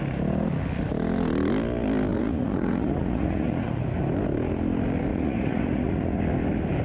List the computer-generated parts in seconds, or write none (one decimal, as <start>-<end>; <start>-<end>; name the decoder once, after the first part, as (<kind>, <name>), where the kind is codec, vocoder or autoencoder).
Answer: 2.1-3.8 (vocoder, Vocos); 5.1-6.2